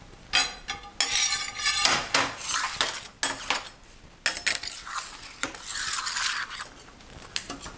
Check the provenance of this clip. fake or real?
real